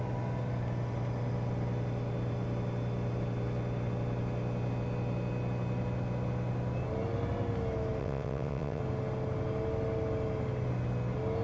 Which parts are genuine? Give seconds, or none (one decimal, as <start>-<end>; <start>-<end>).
0.0-8.0; 8.8-11.4